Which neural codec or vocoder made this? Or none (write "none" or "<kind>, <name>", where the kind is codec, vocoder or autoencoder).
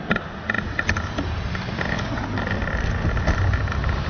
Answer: none